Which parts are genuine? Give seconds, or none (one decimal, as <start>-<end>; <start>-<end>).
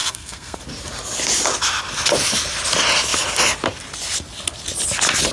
0.6-5.3